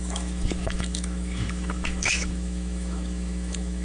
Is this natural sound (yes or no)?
no